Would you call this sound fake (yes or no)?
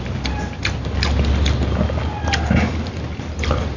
no